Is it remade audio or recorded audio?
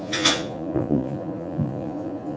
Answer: remade